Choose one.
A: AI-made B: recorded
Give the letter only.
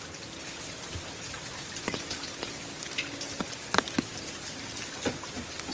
B